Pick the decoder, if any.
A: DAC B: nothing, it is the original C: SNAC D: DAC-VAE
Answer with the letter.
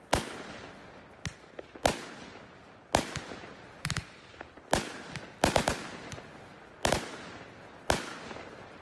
B